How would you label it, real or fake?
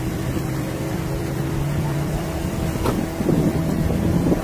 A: fake